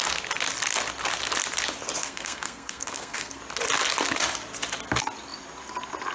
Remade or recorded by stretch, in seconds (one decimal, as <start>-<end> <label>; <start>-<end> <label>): 0.0-2.0 recorded; 2.0-3.4 remade; 3.4-6.1 recorded